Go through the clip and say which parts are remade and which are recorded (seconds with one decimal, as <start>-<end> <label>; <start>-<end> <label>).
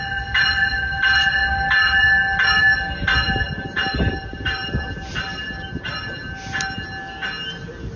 0.0-8.0 recorded